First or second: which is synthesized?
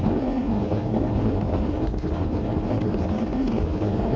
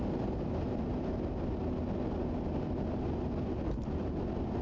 first